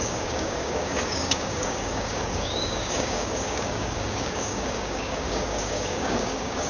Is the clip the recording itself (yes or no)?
no